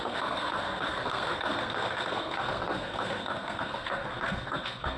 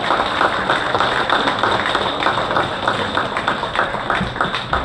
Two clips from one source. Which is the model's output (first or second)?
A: first